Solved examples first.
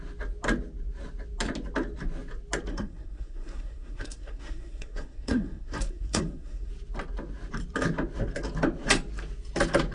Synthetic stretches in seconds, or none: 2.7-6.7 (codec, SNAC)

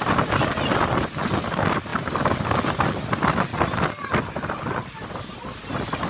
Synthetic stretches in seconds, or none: none

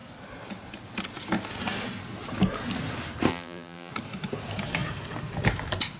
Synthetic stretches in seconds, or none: 3.3-3.9 (vocoder, BigVGAN v2)

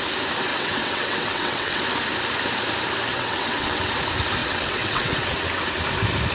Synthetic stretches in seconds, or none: 0.5-1.8 (vocoder, WaveNeXt); 3.1-3.9; 4.4-5.6